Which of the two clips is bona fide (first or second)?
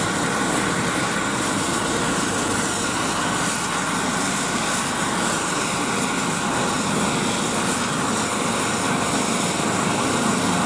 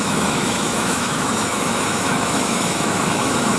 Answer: first